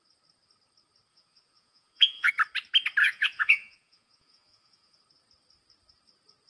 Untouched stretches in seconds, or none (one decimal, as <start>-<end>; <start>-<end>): 0.0-1.1; 2.3-3.0; 5.0-6.5